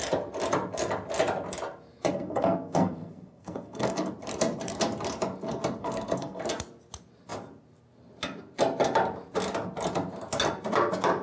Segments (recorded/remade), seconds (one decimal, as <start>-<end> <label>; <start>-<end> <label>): 0.0-2.1 recorded; 2.1-4.1 remade; 4.1-5.8 recorded; 5.8-6.4 remade; 6.4-11.2 recorded